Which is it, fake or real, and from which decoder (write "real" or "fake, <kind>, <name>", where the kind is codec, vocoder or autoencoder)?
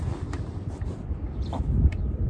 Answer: fake, vocoder, BigVGAN v2